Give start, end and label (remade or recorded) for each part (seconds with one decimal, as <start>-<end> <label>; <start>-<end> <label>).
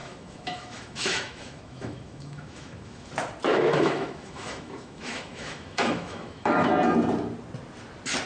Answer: 0.0-3.1 remade; 3.1-3.5 recorded; 3.5-6.7 remade; 6.7-8.3 recorded